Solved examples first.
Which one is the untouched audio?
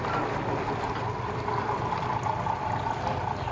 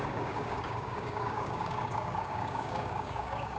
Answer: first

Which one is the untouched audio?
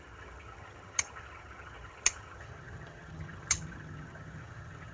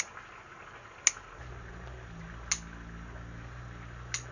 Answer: second